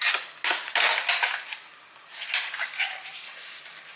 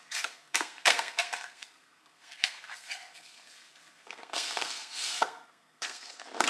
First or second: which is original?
first